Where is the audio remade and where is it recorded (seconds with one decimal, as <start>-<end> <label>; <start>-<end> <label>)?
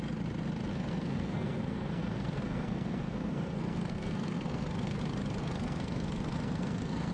0.0-0.7 recorded; 0.7-5.0 remade; 5.0-5.4 recorded; 5.4-7.1 remade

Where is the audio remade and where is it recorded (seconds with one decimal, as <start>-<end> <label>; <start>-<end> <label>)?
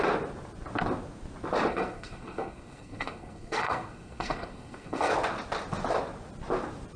0.0-1.7 recorded; 1.7-5.1 remade; 5.1-7.0 recorded